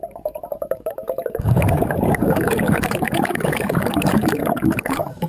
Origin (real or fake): fake